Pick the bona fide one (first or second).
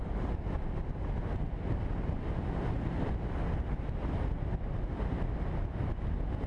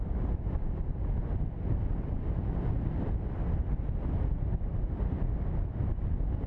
first